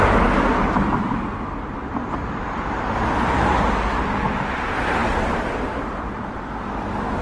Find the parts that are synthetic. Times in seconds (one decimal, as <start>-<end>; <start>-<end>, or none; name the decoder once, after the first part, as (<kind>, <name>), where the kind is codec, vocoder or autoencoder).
none